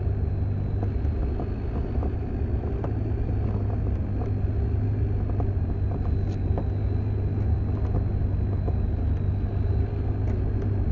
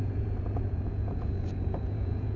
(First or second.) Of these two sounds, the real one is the first